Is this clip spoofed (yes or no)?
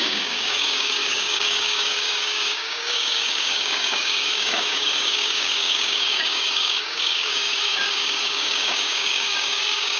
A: yes